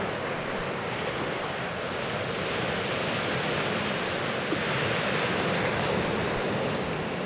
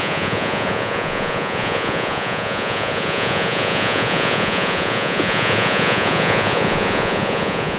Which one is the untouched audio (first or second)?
first